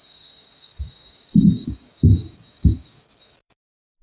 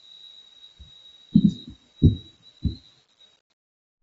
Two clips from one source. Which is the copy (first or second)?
first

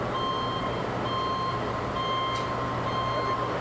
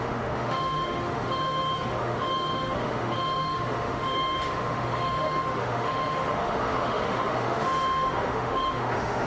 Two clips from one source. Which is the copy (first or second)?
second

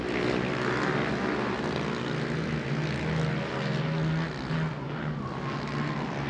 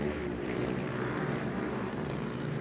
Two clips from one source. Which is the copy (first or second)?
second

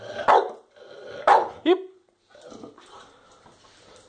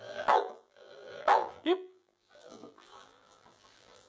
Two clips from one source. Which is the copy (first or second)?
second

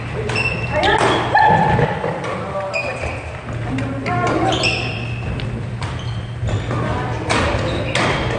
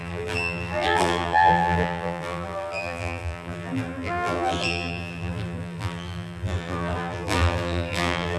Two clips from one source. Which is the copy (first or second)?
second